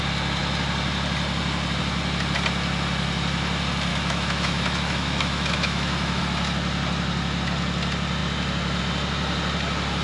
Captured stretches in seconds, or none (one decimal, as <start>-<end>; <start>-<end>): 0.0-3.9; 6.2-10.0